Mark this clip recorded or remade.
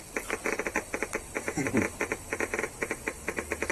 recorded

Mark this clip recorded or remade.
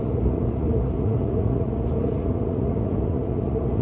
remade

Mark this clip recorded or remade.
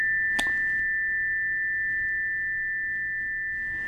recorded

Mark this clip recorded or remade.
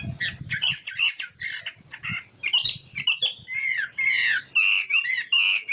recorded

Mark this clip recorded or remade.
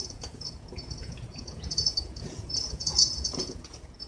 remade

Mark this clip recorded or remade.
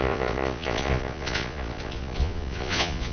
remade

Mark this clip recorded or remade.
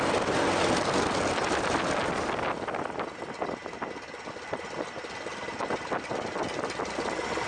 recorded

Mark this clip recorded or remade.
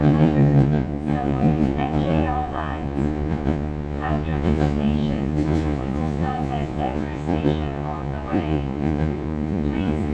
remade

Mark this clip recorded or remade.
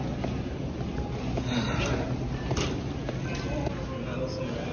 recorded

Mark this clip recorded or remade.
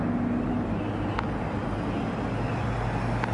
recorded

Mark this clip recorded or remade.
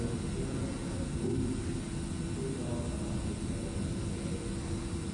recorded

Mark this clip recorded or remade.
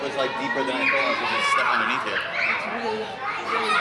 recorded